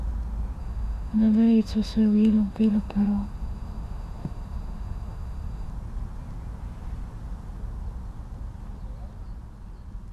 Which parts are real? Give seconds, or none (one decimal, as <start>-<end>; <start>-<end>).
0.0-0.6; 5.7-10.1